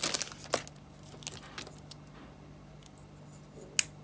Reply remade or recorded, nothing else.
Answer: recorded